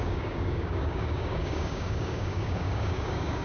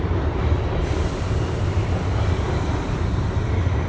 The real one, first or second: second